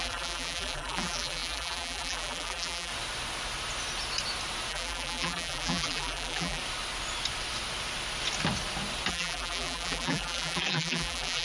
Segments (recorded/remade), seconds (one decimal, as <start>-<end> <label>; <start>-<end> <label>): 0.0-2.9 remade; 2.9-4.7 recorded; 4.7-6.6 remade; 6.6-9.1 recorded; 9.1-11.4 remade